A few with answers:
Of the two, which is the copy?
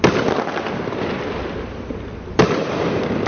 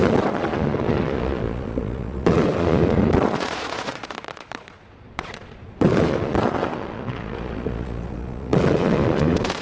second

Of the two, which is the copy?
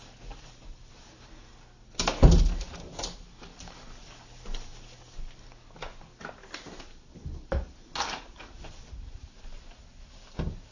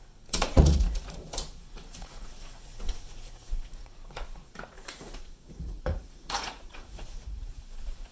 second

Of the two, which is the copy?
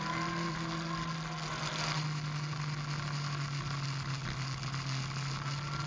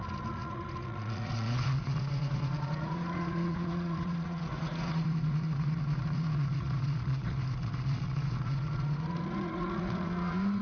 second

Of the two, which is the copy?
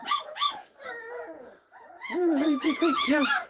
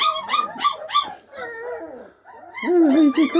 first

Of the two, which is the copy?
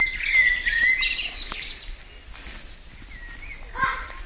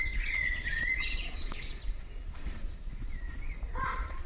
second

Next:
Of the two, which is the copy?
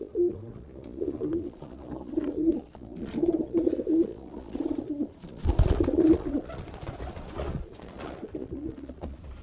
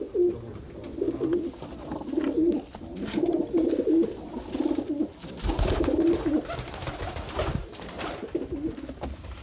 first